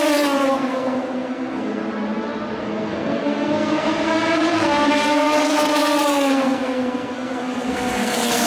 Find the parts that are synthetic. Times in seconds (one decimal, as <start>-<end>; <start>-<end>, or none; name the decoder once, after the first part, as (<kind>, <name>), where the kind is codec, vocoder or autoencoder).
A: 0.0-1.8 (codec, SNAC); 2.6-8.5